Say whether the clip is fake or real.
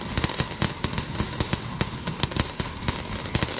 real